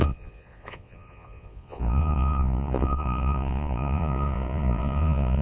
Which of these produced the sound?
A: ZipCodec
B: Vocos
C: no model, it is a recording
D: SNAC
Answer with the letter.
B